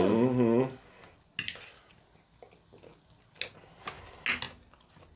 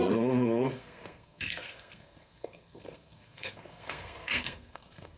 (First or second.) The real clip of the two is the first